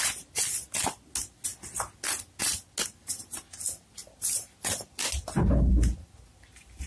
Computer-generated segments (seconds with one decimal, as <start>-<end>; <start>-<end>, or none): none